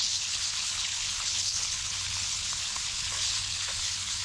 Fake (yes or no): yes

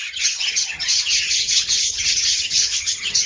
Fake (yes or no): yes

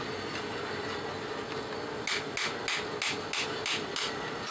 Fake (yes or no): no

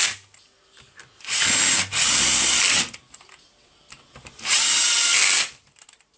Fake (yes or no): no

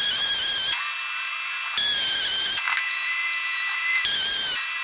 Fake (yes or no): no